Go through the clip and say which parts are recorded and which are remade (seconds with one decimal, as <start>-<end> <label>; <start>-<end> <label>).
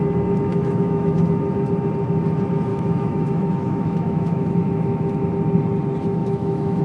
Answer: 0.0-0.5 recorded; 0.5-1.2 remade; 1.2-2.7 recorded; 2.7-5.3 remade; 5.3-6.2 recorded; 6.2-6.8 remade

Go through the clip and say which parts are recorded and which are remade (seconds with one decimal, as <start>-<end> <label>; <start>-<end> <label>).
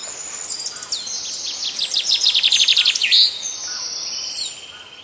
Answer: 0.0-5.0 recorded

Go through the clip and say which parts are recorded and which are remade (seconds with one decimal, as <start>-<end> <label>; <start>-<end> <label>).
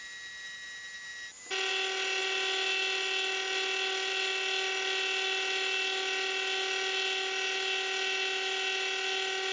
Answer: 0.0-9.5 recorded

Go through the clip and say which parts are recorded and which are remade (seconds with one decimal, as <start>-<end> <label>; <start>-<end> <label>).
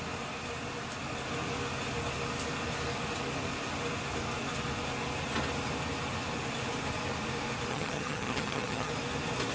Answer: 0.0-7.7 recorded; 7.7-8.9 remade; 8.9-9.5 recorded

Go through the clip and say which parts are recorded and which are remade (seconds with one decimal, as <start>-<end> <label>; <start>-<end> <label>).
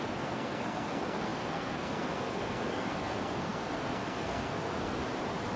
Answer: 0.0-5.0 remade; 5.0-5.6 recorded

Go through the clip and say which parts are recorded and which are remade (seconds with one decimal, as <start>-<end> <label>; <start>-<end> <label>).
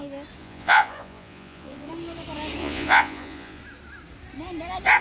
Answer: 0.0-0.4 recorded; 0.4-1.9 remade; 1.9-2.6 recorded; 2.6-3.6 remade; 3.6-5.0 recorded